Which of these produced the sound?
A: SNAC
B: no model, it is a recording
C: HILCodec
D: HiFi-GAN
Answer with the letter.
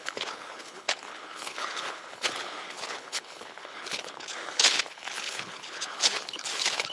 C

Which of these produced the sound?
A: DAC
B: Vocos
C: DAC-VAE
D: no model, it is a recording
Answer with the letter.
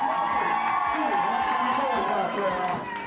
D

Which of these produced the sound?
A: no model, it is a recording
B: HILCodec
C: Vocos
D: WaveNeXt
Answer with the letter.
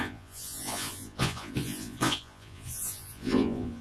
C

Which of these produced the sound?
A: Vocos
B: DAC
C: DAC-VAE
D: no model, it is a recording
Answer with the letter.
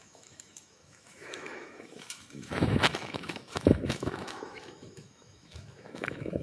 C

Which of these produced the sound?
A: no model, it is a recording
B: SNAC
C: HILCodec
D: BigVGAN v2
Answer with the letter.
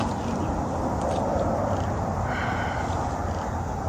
A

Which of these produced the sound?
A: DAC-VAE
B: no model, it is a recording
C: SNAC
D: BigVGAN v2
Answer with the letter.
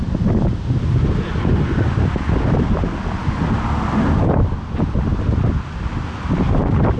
B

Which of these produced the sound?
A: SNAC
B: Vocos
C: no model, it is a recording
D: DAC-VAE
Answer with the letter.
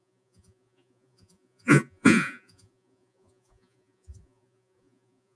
B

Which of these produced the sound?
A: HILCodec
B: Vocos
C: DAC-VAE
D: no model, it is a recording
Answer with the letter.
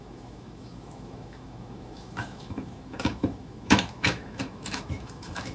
C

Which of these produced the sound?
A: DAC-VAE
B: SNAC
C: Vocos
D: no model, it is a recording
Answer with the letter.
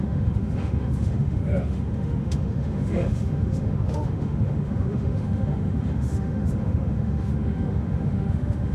A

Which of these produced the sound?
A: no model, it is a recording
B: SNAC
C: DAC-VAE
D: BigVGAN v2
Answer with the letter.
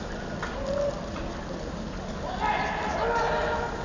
A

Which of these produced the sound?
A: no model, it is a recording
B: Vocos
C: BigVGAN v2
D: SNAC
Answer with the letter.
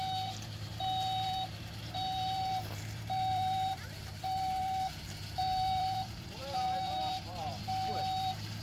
C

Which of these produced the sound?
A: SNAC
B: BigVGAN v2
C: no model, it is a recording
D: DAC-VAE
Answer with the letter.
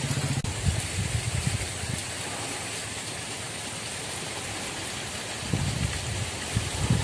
C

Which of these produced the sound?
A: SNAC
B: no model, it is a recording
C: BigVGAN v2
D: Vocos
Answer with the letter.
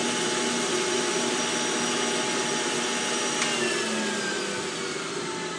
B